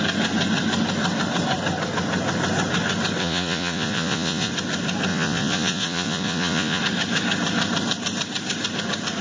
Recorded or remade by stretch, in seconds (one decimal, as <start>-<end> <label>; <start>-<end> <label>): 0.0-3.2 recorded; 3.2-4.5 remade; 4.5-5.1 recorded; 5.1-6.8 remade; 6.8-9.2 recorded